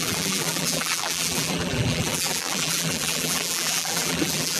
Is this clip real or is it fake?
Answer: fake